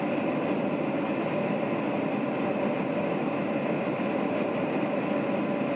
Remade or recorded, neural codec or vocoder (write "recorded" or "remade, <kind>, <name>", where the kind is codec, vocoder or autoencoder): recorded